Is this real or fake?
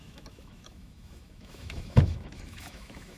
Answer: fake